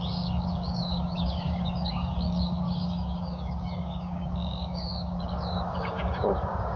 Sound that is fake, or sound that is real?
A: fake